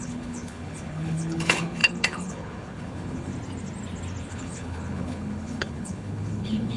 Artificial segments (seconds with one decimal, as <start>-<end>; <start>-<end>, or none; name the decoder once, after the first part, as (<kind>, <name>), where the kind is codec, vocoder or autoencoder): 0.0-3.3 (codec, HILCodec); 4.2-6.8